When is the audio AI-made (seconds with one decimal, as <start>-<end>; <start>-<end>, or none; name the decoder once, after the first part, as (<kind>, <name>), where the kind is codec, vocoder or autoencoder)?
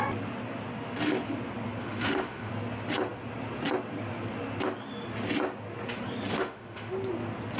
1.8-2.5 (autoencoder, DAC-VAE); 6.3-6.9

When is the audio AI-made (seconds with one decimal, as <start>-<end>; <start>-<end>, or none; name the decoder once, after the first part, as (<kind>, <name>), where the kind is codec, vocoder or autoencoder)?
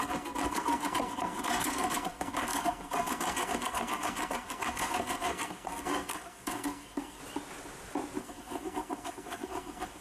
0.0-7.2 (codec, SNAC); 8.2-10.0